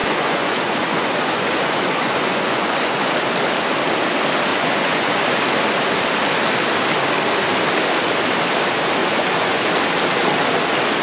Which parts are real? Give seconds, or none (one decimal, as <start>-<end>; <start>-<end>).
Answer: 3.1-4.5; 5.4-9.0; 9.7-11.0